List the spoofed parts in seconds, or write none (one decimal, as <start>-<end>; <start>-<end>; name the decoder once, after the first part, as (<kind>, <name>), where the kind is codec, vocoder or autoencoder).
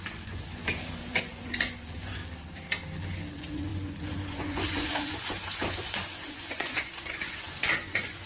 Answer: 0.0-2.2 (vocoder, Vocos); 3.3-8.3